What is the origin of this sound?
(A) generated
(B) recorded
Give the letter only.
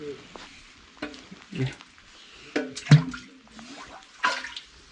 B